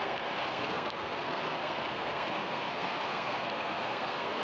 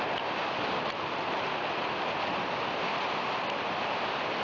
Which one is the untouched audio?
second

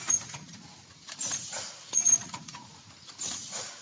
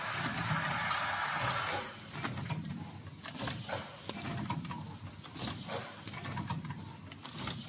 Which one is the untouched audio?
second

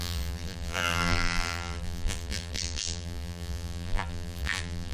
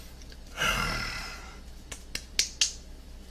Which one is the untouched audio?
second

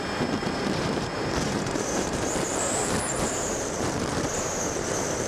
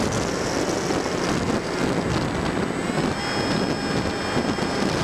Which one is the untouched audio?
second